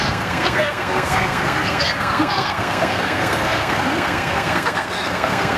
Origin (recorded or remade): remade